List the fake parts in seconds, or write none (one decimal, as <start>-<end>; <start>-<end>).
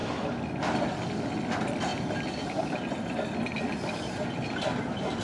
none